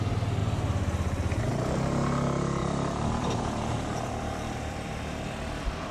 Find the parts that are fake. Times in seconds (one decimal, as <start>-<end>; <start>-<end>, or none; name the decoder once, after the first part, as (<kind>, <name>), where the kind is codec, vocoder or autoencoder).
2.6-5.9 (vocoder, BigVGAN v2)